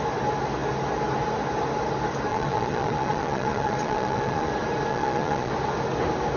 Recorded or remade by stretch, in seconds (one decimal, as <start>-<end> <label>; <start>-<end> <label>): 0.0-2.3 recorded; 2.3-4.5 remade; 4.5-4.9 recorded; 4.9-5.5 remade; 5.5-6.4 recorded